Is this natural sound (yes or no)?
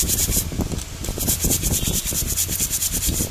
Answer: yes